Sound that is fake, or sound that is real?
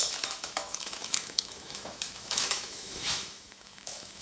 fake